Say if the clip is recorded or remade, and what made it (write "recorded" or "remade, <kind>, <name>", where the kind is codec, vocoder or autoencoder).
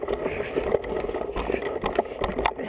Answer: recorded